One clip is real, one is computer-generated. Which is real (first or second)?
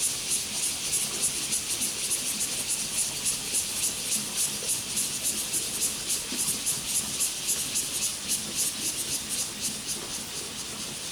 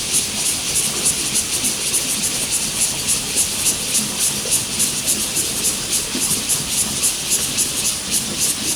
first